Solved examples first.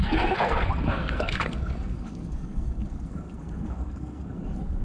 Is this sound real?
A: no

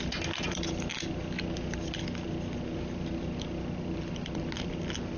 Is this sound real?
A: yes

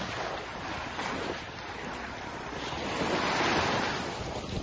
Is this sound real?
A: yes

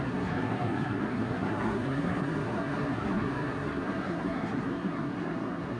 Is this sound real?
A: no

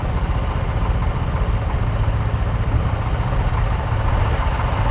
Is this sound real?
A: yes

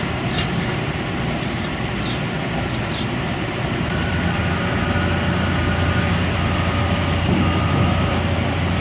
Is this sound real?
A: yes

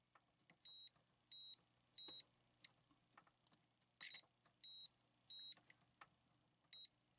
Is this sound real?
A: yes